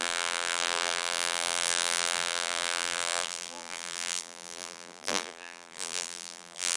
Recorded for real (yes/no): no